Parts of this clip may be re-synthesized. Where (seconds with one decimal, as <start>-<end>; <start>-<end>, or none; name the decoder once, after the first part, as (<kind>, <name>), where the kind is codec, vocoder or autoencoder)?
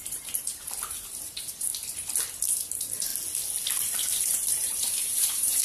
0.0-1.7 (vocoder, BigVGAN v2); 2.5-3.1; 4.2-5.6